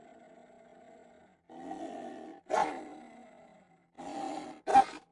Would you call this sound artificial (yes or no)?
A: no